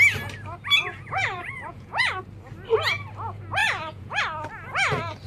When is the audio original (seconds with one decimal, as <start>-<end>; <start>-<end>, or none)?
0.0-0.9; 2.2-3.6; 4.2-5.3